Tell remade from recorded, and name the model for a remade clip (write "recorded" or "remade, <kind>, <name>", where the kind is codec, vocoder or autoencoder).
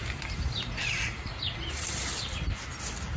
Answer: recorded